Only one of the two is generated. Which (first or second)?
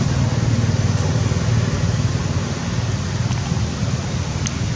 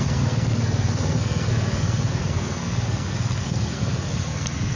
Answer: second